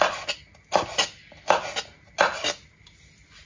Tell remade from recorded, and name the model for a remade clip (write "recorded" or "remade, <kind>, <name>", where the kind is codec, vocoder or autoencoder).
recorded